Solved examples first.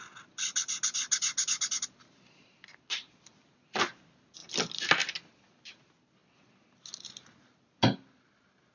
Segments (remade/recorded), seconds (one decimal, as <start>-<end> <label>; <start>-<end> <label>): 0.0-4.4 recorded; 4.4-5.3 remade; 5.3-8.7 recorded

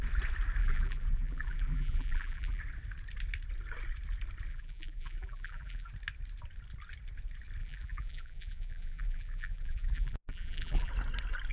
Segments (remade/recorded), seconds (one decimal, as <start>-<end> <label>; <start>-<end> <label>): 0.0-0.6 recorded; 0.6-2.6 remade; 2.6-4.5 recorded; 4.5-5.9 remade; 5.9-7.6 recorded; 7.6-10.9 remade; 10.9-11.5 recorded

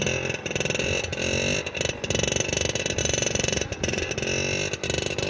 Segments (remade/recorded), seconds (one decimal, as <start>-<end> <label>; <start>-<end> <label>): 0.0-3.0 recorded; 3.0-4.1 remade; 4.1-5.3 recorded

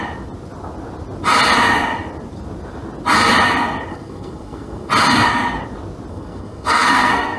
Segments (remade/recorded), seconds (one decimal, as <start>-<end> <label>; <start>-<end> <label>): 0.0-3.9 recorded; 3.9-4.9 remade; 4.9-6.1 recorded; 6.1-7.4 remade

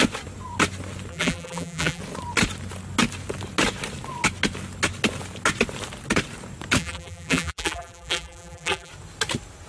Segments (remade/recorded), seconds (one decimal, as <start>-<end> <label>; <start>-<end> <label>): 0.0-1.1 recorded; 1.1-2.0 remade; 2.0-6.8 recorded; 6.8-8.9 remade; 8.9-9.7 recorded

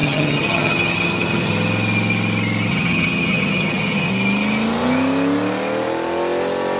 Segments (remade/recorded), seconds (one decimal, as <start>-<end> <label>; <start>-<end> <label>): 0.0-1.5 remade; 1.5-2.7 recorded; 2.7-4.1 remade; 4.1-6.8 recorded

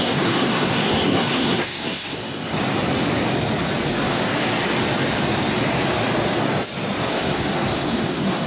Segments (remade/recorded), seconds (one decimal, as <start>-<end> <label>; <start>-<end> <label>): 0.0-2.2 remade; 2.2-7.1 recorded; 7.1-8.5 remade